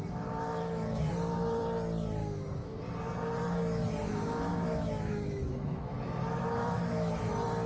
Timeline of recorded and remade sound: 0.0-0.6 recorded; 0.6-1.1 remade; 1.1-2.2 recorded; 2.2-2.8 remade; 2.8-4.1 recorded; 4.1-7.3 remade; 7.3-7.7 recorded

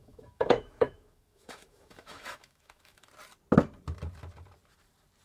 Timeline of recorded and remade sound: 0.0-3.1 remade; 3.1-5.2 recorded

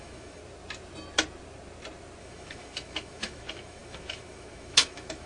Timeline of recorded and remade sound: 0.0-0.4 remade; 0.4-2.2 recorded; 2.2-5.3 remade